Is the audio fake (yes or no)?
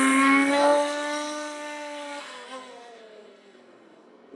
yes